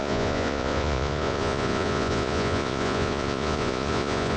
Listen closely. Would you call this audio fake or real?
fake